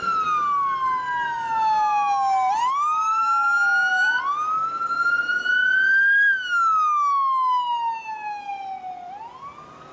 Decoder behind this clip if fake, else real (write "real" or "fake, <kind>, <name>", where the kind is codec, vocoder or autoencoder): real